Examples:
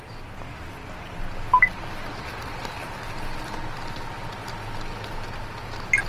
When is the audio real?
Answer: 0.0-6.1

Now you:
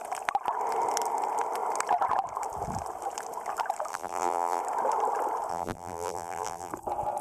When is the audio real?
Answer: 0.0-3.9; 4.6-5.5; 6.7-7.2

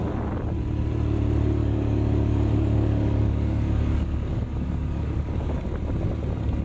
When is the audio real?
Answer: 0.0-1.6; 5.6-6.6

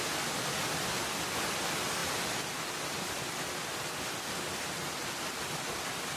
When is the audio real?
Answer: 0.0-6.2

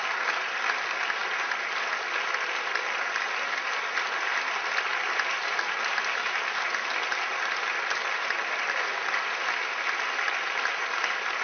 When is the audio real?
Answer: 0.0-11.4

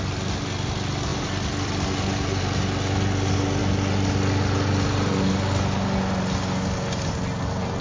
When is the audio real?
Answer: 0.0-7.8

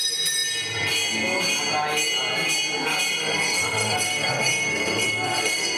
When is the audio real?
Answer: 0.0-3.2